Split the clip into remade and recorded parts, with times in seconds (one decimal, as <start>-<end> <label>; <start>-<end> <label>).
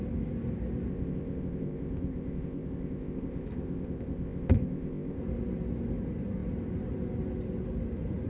0.0-0.9 recorded; 0.9-5.2 remade; 5.2-8.3 recorded